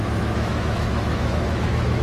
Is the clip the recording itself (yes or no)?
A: no